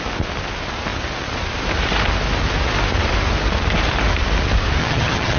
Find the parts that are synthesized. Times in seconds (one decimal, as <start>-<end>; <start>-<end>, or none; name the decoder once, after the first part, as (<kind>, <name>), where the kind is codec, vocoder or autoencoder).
4.8-5.4 (vocoder, HiFi-GAN)